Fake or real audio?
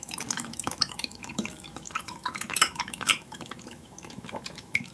fake